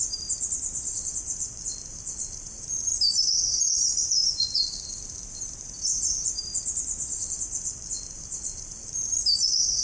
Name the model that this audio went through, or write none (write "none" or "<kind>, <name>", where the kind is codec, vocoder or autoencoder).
vocoder, BigVGAN v2